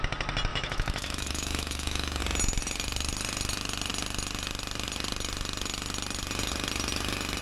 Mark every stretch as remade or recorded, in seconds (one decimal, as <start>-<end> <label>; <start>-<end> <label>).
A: 0.0-0.5 recorded; 0.5-2.2 remade; 2.2-7.4 recorded